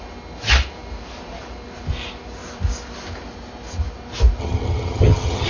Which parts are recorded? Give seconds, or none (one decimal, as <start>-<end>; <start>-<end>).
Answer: 0.0-4.4